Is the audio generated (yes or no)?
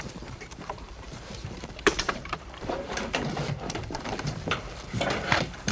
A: yes